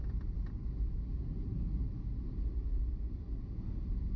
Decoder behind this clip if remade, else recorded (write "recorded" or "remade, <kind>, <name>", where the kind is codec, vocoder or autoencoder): recorded